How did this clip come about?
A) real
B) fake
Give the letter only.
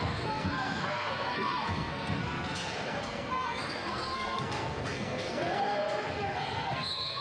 B